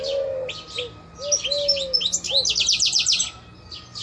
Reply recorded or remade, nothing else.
recorded